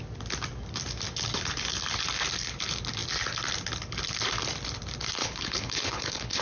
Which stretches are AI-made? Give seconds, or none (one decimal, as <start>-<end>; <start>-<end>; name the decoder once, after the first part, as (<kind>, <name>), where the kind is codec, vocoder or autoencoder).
5.2-6.4 (codec, HILCodec)